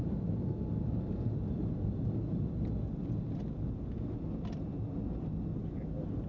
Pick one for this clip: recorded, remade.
recorded